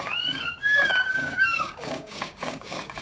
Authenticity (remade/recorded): remade